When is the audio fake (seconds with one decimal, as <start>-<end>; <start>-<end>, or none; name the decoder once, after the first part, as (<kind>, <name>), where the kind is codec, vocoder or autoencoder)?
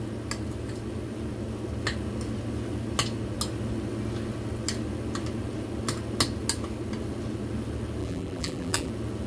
8.0-8.9 (vocoder, BigVGAN v2)